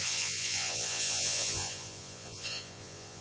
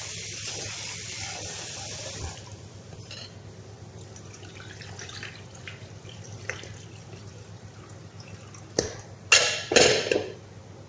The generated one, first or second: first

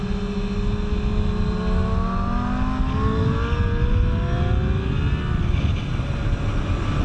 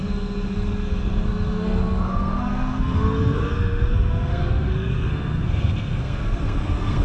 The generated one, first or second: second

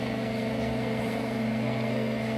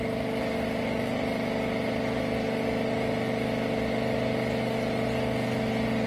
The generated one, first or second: first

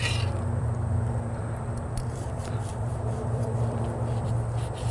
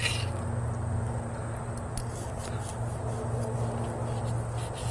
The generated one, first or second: first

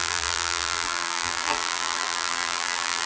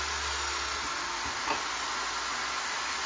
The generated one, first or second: first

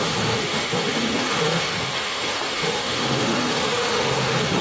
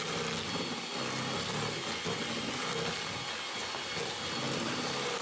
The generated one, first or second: first